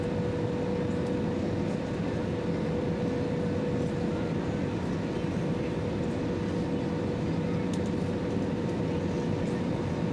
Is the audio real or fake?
real